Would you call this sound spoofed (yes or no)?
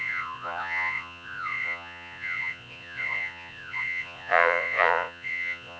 yes